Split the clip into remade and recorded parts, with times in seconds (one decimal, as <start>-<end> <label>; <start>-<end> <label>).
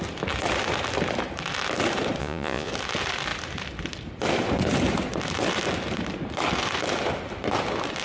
0.0-2.2 recorded; 2.2-2.7 remade; 2.7-8.0 recorded